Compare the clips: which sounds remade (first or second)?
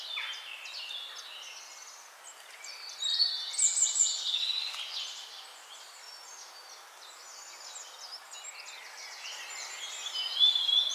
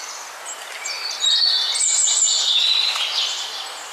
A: second